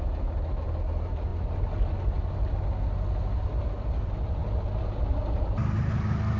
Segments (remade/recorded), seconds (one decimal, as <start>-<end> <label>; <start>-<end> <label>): 0.0-6.4 recorded